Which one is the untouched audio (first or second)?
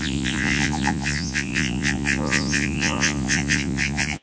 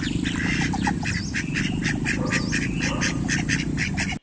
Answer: second